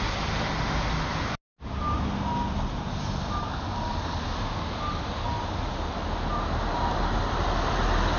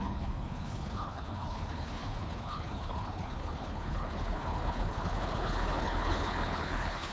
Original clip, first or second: first